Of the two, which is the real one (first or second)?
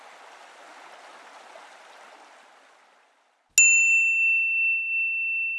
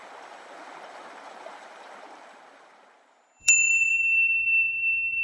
first